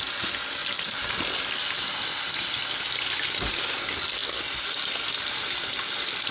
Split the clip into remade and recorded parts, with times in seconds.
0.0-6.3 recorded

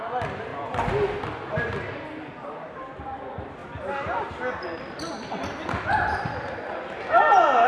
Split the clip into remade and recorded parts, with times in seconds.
0.0-7.7 recorded

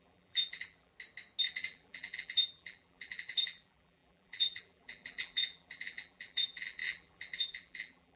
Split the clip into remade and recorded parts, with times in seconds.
0.0-0.9 remade; 0.9-1.5 recorded; 1.5-8.2 remade

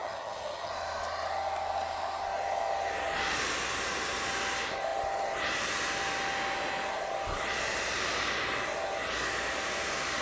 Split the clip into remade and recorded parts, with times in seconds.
0.0-0.7 remade; 0.7-10.2 recorded

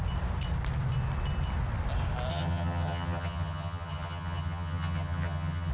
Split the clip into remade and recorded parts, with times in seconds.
0.0-2.3 recorded; 2.3-5.7 remade

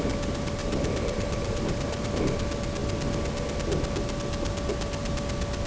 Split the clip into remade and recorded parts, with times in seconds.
0.0-0.6 recorded; 0.6-2.2 remade; 2.2-5.7 recorded